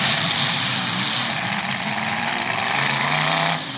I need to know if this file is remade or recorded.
remade